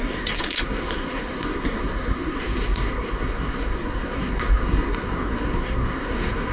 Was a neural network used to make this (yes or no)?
yes